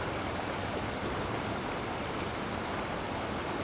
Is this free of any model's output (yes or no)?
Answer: yes